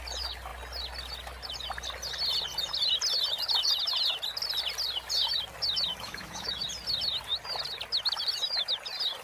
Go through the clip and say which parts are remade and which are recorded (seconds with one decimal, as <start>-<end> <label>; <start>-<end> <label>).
0.0-5.9 recorded; 5.9-6.6 remade; 6.6-9.2 recorded